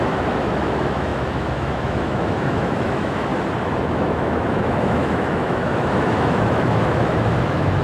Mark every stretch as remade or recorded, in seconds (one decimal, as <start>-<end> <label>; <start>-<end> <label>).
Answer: 0.0-3.3 remade; 3.3-3.8 recorded; 3.8-7.8 remade